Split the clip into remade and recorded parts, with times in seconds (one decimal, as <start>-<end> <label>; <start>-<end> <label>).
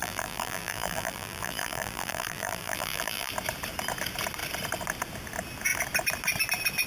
0.0-3.3 remade; 3.3-6.9 recorded